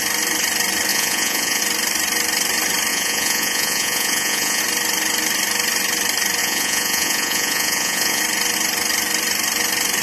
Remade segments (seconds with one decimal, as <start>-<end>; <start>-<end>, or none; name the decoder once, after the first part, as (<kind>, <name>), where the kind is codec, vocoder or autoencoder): 0.9-1.6 (vocoder, Vocos); 2.9-4.6; 6.4-8.2